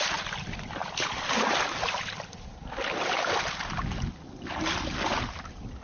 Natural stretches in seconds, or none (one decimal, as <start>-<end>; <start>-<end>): 0.0-5.8